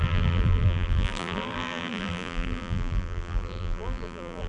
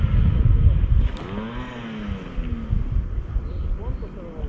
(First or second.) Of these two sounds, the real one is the second